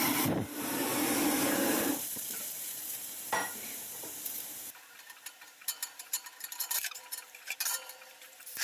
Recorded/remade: remade